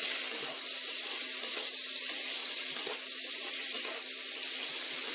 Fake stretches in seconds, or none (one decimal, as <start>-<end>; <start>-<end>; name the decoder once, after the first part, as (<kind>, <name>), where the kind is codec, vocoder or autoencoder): none